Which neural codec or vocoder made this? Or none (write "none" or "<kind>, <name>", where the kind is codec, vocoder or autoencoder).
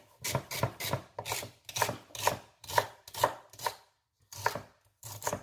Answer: none